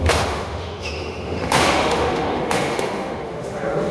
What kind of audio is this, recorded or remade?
remade